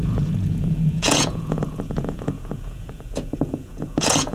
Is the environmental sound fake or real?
fake